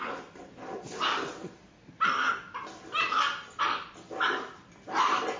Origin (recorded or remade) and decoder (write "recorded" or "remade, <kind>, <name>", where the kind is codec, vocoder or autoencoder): recorded